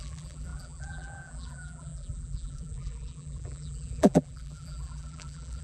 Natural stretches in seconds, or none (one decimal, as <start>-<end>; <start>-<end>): none